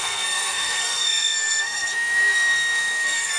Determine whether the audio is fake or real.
fake